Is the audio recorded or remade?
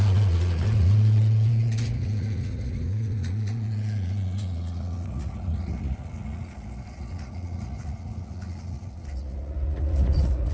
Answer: remade